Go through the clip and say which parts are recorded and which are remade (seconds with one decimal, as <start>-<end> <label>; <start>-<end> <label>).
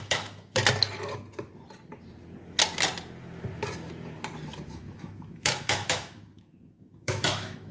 0.0-0.6 remade; 0.6-4.7 recorded; 4.7-7.7 remade